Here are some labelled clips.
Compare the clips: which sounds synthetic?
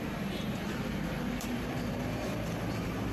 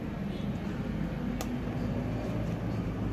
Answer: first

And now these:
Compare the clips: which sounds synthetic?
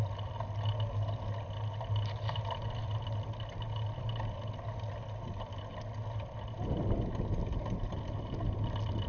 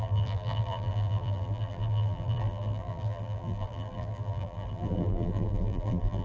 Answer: second